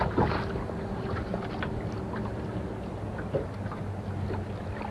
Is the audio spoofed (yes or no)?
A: no